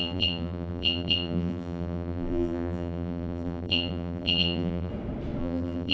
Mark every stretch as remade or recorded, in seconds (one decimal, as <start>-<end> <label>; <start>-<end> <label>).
0.0-4.9 remade; 4.9-5.4 recorded; 5.4-5.9 remade